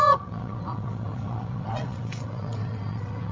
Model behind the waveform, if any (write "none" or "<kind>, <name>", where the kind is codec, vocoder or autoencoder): vocoder, WaveNeXt